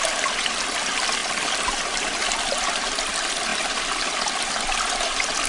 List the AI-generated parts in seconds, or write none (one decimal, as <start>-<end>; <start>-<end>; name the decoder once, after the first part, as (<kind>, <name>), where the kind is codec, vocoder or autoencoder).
none